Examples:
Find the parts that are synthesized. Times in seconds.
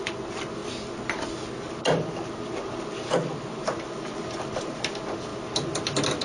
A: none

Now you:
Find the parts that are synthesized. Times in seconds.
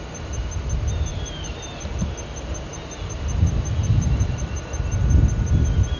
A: 1.1-4.7 (vocoder, BigVGAN v2)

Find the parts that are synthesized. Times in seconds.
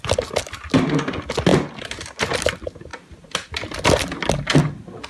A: none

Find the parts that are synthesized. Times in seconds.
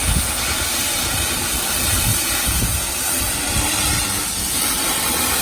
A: 2.1-2.9 (vocoder, Vocos)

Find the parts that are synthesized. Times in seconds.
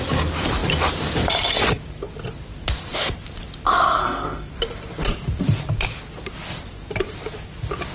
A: 4.0-4.5 (codec, SNAC)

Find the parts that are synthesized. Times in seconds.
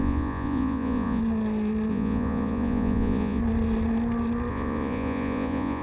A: 0.0-1.2 (vocoder, Vocos); 1.9-3.4; 4.5-5.8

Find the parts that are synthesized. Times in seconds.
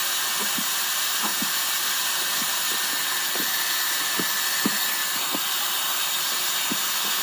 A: none